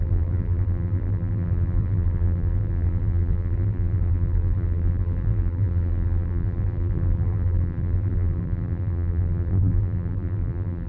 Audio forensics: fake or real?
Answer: fake